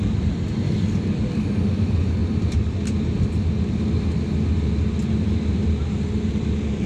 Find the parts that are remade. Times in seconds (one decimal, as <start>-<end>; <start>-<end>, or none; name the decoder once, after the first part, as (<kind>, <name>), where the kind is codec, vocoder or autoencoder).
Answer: none